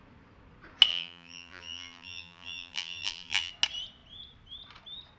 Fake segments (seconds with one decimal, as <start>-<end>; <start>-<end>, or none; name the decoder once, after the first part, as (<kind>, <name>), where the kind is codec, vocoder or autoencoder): 0.9-3.5 (vocoder, BigVGAN v2)